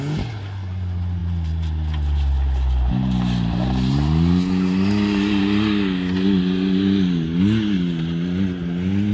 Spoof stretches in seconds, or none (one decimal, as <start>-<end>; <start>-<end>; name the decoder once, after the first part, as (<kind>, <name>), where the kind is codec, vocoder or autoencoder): none